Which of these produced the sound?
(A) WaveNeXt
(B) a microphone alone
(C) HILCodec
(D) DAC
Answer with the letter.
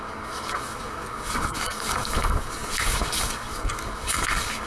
D